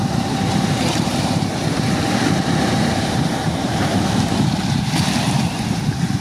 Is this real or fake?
fake